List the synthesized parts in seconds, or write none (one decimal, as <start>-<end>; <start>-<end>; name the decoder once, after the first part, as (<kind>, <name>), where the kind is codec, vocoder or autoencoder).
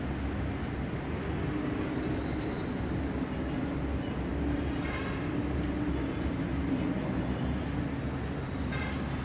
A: none